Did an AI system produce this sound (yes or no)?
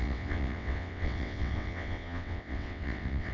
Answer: yes